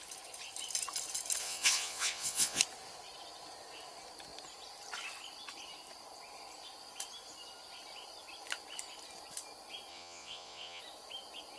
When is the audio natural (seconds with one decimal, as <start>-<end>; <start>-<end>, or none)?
0.0-1.4; 2.6-9.9; 10.8-11.6